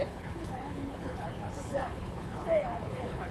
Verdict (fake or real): fake